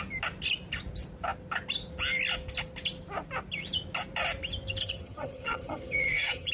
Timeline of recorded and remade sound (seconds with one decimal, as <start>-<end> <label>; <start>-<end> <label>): 0.0-4.8 recorded; 4.8-6.5 remade